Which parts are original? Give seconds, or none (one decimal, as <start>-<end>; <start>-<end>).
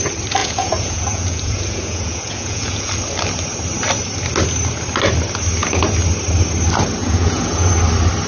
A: 0.0-0.4; 2.9-7.0; 7.7-8.3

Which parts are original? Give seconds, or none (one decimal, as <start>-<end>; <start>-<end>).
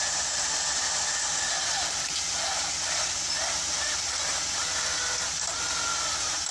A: 0.0-6.5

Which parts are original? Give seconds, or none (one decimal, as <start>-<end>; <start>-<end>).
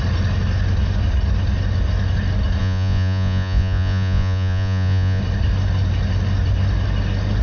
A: 0.0-2.6; 5.2-7.4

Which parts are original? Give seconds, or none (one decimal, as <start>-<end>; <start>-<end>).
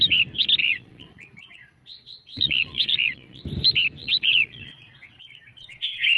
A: 0.0-0.6; 3.4-4.0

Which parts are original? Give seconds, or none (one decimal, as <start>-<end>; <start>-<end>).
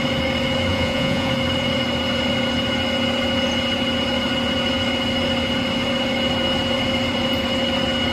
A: 0.0-0.7; 1.3-8.1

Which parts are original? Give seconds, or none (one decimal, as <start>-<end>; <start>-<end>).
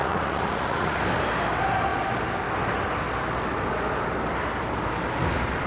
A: 1.0-5.7